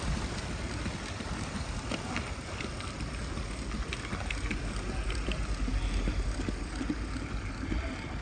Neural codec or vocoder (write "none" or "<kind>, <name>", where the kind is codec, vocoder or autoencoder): none